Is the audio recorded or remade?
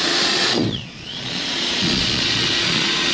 remade